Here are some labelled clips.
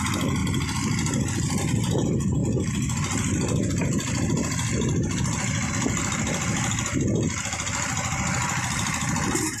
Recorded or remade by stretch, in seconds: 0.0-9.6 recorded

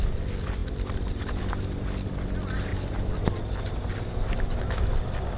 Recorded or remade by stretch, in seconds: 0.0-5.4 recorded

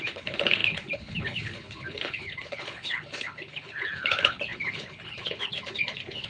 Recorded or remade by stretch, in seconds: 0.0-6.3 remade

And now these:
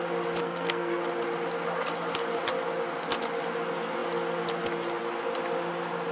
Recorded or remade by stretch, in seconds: 0.0-0.4 recorded; 0.4-1.0 remade; 1.0-6.1 recorded

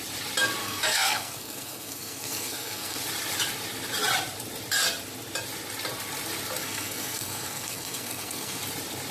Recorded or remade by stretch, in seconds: 0.0-0.6 recorded; 0.6-3.0 remade; 3.0-6.6 recorded; 6.6-8.6 remade; 8.6-9.1 recorded